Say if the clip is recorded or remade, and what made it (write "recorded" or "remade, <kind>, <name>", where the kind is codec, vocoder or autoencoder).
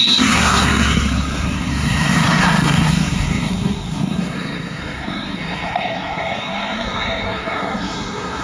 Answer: remade, codec, SNAC